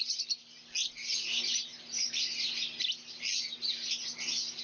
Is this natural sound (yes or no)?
yes